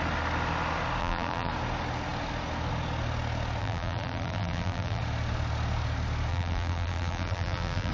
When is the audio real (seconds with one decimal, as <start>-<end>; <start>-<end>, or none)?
0.0-1.0; 1.5-3.6; 5.0-6.3